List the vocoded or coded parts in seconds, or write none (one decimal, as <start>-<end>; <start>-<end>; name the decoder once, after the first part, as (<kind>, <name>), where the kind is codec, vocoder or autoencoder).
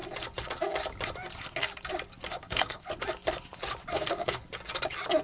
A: 2.4-2.9 (codec, SNAC); 3.9-4.4